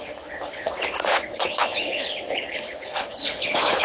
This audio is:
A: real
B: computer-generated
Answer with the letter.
B